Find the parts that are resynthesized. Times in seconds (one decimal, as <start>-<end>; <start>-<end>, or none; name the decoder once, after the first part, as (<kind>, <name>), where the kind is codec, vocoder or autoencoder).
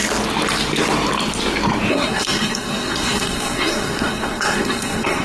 1.9-5.2 (codec, SNAC)